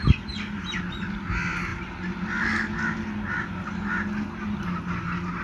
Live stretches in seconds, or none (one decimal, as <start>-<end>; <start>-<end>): 0.0-5.4

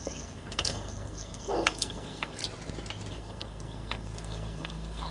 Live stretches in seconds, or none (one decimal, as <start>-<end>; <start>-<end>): 2.4-3.1

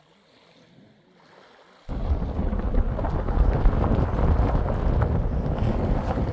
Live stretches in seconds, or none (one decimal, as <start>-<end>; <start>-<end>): 0.0-6.3

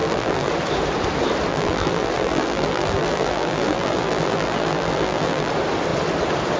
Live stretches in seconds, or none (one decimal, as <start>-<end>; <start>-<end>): 0.5-1.5; 5.5-6.6

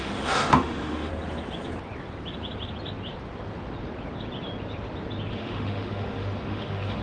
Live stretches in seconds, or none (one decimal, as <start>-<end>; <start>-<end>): 1.1-5.3